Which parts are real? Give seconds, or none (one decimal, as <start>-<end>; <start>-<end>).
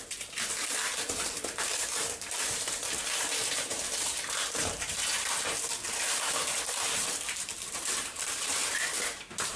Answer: none